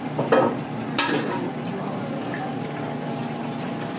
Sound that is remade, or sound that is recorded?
recorded